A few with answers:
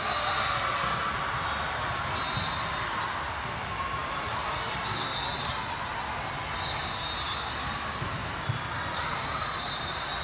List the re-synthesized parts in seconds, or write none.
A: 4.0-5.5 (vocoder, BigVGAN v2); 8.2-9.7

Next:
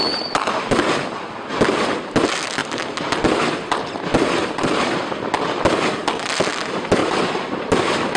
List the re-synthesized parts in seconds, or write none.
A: 4.4-5.0 (vocoder, BigVGAN v2); 7.0-7.7

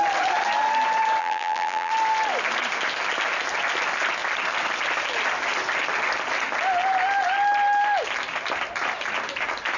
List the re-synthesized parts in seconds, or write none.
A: 1.2-1.9 (vocoder, BigVGAN v2)

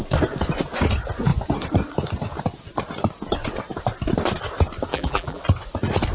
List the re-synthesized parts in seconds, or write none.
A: 4.9-5.4 (vocoder, BigVGAN v2)

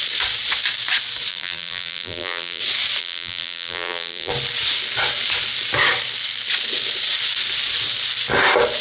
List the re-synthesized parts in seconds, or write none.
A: 1.3-2.6 (vocoder, BigVGAN v2); 3.0-4.3